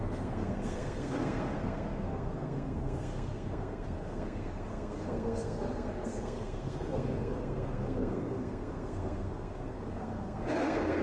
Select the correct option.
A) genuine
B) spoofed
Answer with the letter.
B